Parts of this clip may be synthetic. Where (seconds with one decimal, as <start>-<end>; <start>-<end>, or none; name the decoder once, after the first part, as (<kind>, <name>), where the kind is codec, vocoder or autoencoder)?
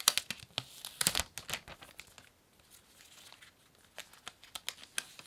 none